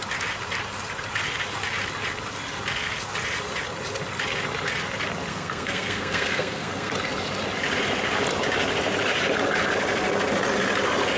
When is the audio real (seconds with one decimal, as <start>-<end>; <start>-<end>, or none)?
0.0-5.3; 6.9-11.2